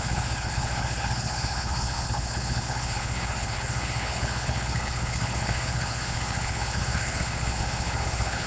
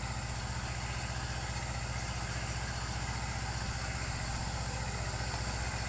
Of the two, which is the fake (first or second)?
first